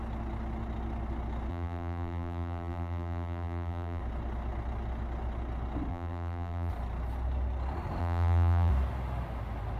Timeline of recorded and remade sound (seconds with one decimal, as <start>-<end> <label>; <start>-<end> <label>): 0.0-1.5 recorded; 1.5-4.0 remade; 4.0-5.9 recorded; 5.9-6.7 remade; 6.7-8.0 recorded; 8.0-8.7 remade; 8.7-9.8 recorded